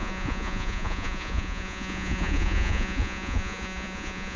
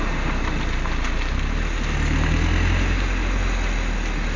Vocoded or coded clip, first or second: first